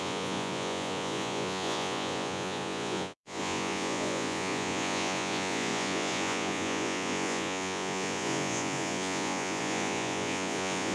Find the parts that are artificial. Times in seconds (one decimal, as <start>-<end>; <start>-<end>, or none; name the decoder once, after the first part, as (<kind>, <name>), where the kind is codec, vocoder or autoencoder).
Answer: 0.0-10.9 (vocoder, Vocos)